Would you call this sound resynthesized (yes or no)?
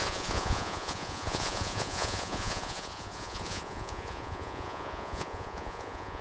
yes